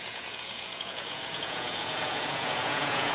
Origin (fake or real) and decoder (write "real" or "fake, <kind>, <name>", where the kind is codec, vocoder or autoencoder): fake, vocoder, Vocos